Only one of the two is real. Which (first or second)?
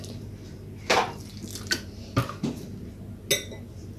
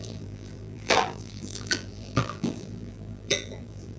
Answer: first